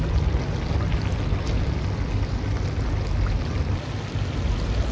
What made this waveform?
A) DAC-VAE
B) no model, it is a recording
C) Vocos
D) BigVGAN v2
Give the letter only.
B